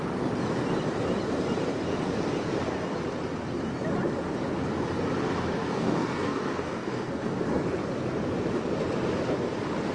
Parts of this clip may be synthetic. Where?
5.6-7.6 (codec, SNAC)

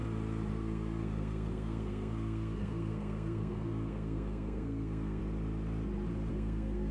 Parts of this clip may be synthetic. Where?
0.5-5.2 (codec, SNAC); 6.3-6.9